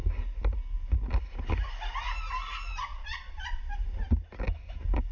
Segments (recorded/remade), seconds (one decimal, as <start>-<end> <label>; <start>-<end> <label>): 0.0-2.9 recorded; 2.9-3.7 remade; 3.7-5.1 recorded